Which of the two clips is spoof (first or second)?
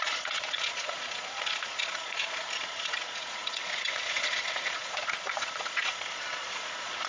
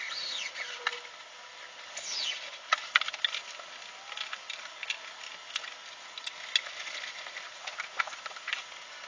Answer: first